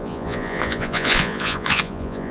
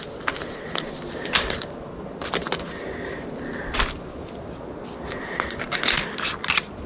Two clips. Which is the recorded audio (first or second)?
second